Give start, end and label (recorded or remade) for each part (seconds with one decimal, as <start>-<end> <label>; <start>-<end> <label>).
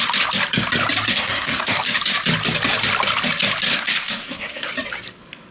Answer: 0.0-1.1 recorded; 1.1-1.8 remade; 1.8-3.7 recorded; 3.7-4.7 remade; 4.7-5.5 recorded